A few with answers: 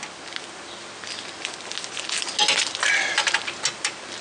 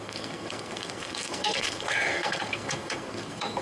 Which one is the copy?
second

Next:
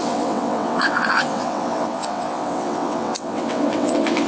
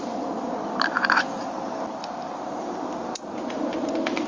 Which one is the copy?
first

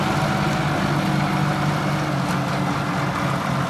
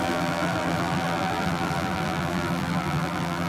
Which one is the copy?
second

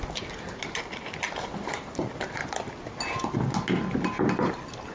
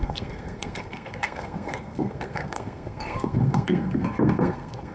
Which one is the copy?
second